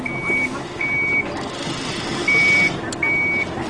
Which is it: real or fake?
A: real